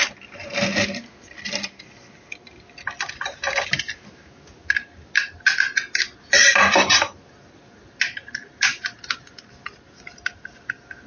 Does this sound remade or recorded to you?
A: recorded